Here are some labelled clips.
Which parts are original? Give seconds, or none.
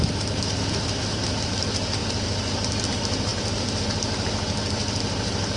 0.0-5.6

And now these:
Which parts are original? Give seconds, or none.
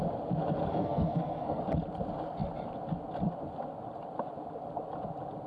0.0-0.7; 1.6-5.5